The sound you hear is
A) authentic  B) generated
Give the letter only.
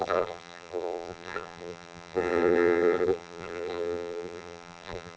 B